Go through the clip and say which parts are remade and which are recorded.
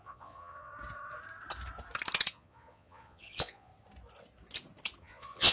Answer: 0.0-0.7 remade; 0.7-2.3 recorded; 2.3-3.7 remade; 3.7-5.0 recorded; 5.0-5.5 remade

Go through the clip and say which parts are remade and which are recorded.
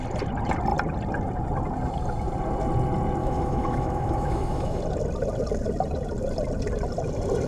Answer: 0.0-3.2 recorded; 3.2-4.8 remade; 4.8-7.5 recorded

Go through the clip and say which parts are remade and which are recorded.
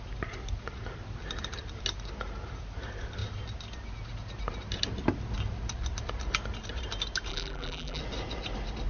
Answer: 0.0-7.3 recorded; 7.3-8.0 remade; 8.0-8.9 recorded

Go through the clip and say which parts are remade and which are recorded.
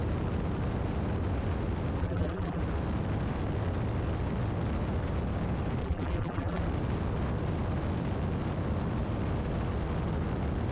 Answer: 0.0-2.0 recorded; 2.0-2.6 remade; 2.6-5.8 recorded; 5.8-6.6 remade; 6.6-10.7 recorded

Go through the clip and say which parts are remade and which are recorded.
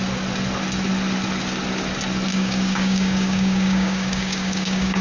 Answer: 0.0-2.3 recorded; 2.3-5.0 remade